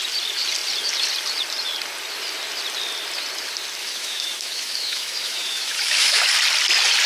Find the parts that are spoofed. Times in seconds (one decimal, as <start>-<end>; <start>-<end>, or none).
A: 3.8-6.3